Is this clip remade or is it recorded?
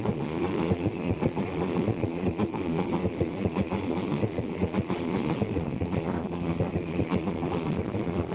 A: remade